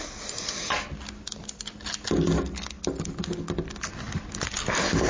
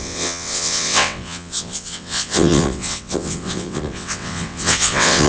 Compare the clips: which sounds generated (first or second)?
second